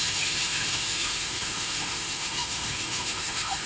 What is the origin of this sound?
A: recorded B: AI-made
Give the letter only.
B